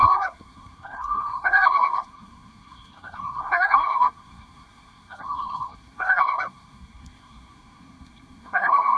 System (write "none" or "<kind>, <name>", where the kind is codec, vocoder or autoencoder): codec, SNAC